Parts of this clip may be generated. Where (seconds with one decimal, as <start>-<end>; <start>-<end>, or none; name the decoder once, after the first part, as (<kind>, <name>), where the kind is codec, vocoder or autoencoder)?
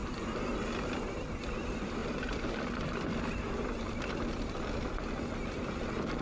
none